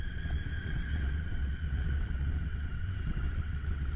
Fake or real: fake